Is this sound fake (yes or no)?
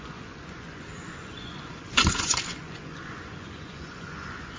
yes